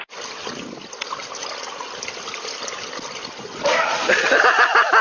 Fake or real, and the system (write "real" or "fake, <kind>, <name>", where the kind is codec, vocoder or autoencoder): real